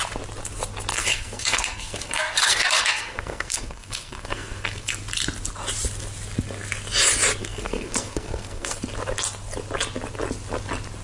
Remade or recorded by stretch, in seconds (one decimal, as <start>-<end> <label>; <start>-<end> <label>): 0.0-0.9 recorded; 0.9-5.0 remade; 5.0-7.4 recorded; 7.4-8.8 remade; 8.8-11.0 recorded